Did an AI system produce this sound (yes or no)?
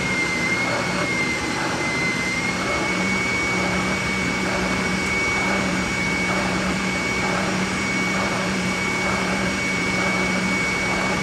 yes